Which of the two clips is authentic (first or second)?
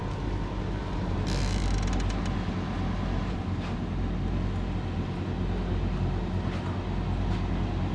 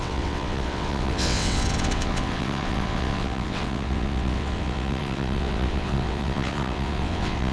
first